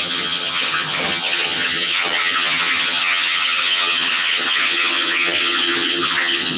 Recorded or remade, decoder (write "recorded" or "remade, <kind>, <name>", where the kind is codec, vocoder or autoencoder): remade, vocoder, HiFi-GAN